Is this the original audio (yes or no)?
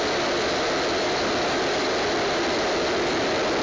yes